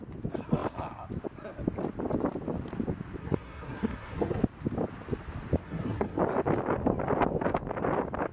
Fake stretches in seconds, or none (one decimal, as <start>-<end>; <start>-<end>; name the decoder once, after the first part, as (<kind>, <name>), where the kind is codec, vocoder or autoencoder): 3.2-4.4 (codec, SNAC); 5.6-6.2